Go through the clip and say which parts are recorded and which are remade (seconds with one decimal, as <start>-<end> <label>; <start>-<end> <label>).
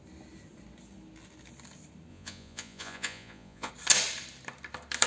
0.0-2.1 recorded; 2.1-3.7 remade; 3.7-5.1 recorded